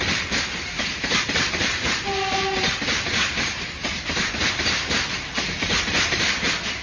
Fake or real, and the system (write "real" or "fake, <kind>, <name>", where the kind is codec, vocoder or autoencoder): fake, vocoder, BigVGAN v2